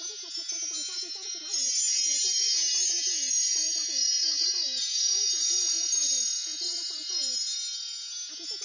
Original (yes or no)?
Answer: no